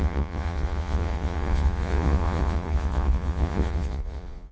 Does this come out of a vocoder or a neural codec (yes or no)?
yes